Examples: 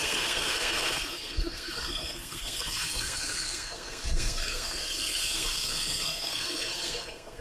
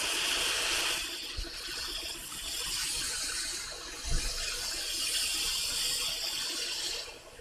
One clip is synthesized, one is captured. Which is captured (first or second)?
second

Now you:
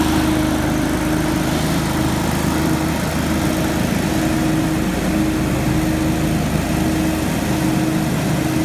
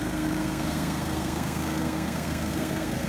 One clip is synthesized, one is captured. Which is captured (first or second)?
first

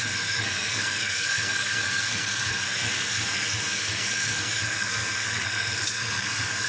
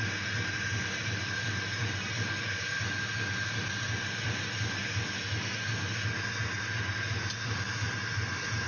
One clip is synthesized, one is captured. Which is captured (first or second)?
second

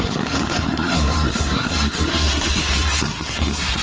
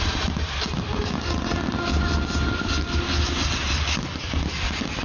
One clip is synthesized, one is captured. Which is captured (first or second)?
second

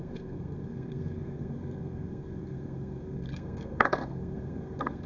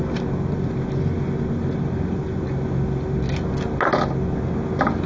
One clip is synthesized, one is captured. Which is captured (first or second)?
second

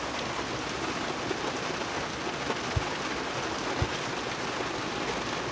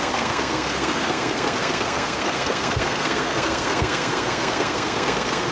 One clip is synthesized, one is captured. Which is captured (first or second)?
first